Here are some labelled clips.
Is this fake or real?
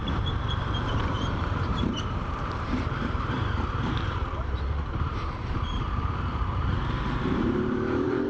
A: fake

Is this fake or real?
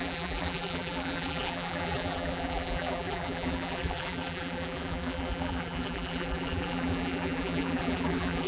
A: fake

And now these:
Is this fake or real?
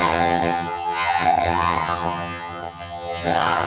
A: fake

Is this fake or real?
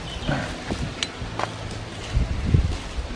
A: real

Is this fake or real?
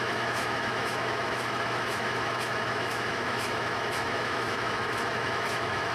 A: fake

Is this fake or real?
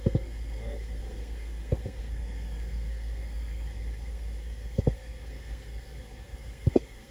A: fake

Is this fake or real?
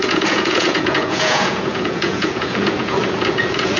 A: fake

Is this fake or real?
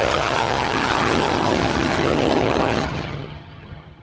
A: fake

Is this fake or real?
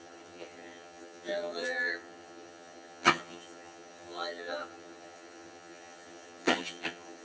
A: fake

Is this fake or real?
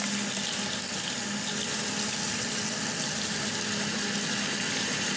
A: real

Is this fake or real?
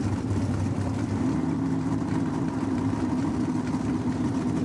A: fake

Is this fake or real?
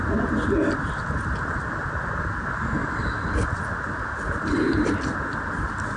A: real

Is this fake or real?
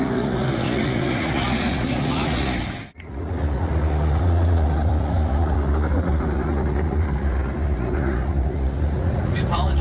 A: fake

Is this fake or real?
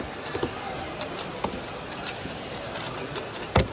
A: real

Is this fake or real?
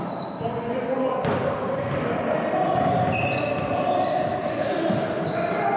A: real